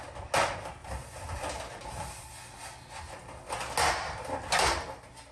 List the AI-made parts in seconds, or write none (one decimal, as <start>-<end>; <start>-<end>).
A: none

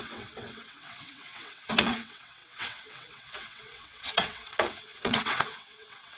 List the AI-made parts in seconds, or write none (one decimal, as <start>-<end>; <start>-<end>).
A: 0.0-6.2

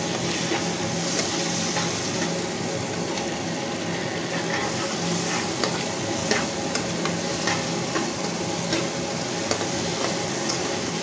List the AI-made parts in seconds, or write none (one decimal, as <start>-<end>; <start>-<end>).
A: 6.2-8.2

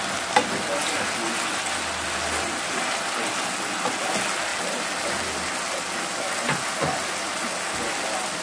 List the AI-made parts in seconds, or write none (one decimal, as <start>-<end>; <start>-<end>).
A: none

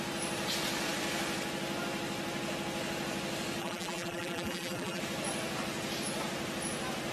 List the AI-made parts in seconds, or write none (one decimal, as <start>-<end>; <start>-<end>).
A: 3.6-5.0